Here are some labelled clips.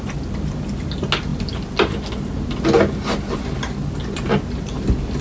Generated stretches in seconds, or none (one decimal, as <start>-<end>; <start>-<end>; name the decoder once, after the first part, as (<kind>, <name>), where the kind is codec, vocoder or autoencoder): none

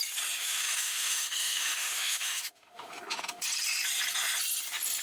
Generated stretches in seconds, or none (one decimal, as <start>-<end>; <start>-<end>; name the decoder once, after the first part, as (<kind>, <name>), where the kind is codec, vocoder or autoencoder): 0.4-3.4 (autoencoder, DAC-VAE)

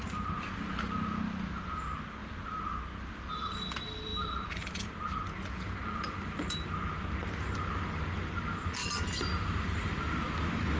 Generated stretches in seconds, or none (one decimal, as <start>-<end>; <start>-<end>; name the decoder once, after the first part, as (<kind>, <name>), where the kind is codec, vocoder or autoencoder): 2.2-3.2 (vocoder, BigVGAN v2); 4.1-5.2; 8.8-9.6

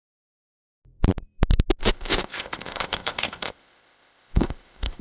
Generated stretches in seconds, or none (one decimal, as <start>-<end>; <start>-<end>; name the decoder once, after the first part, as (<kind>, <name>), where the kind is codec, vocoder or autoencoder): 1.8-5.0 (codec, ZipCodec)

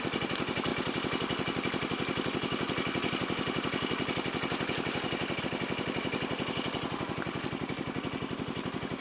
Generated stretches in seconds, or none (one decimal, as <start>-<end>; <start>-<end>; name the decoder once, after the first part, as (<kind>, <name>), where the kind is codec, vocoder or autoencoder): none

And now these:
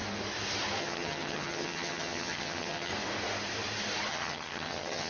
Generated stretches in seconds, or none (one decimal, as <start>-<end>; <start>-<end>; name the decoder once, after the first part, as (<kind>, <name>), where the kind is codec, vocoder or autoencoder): 0.8-2.9 (vocoder, HiFi-GAN); 4.1-5.1